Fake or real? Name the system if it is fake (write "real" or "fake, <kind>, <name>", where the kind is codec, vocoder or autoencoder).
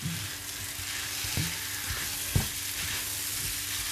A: real